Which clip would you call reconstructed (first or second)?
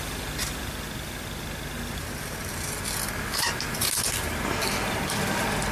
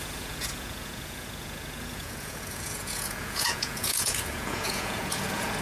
second